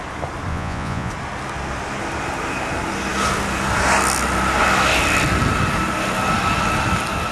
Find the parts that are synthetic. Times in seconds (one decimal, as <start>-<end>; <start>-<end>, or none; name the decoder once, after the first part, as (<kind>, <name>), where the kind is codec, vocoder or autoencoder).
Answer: 0.5-1.1 (vocoder, Vocos)